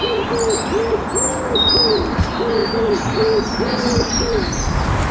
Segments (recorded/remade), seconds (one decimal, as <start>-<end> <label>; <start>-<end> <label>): 0.0-2.6 recorded; 2.6-5.1 remade